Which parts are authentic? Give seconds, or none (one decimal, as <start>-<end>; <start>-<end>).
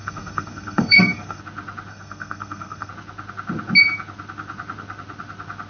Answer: 1.4-1.9; 2.9-5.7